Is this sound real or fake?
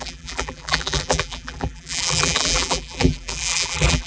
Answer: fake